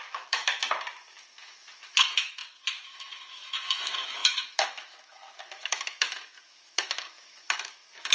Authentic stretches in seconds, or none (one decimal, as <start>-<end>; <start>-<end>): 0.5-1.0